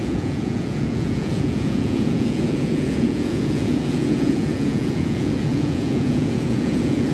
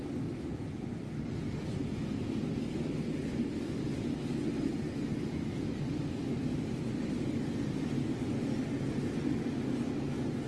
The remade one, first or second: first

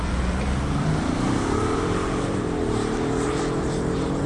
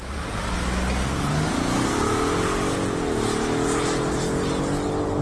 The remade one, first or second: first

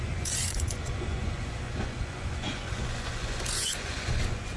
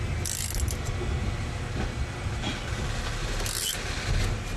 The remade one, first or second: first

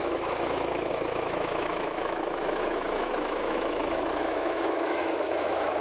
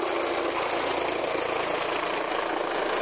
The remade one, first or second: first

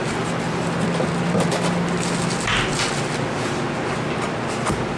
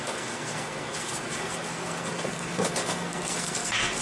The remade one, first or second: second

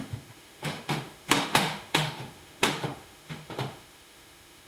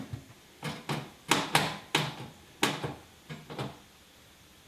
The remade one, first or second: first